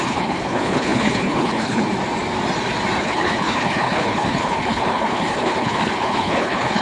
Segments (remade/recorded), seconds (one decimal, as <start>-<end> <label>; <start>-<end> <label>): 0.0-1.9 remade; 1.9-3.0 recorded; 3.0-6.8 remade